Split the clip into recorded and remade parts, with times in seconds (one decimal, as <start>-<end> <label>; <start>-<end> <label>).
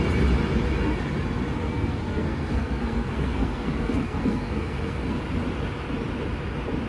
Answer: 0.0-1.6 recorded; 1.6-5.2 remade; 5.2-6.9 recorded